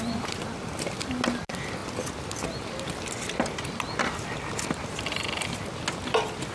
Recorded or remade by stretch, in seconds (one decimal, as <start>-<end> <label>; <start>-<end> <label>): 0.0-6.5 recorded